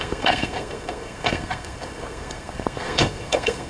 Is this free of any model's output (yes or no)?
no